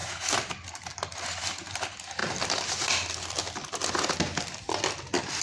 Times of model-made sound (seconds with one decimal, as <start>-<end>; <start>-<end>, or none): none